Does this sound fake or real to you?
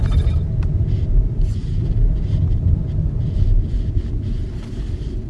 real